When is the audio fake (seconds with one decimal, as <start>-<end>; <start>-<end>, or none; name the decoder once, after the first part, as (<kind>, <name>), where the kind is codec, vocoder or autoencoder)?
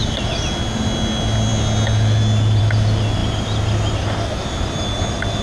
none